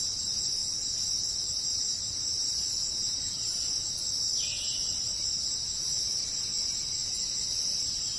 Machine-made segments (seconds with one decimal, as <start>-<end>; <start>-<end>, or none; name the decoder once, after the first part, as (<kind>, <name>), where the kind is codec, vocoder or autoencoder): 0.0-0.6 (vocoder, BigVGAN v2); 1.3-3.5; 4.4-7.0; 7.6-8.2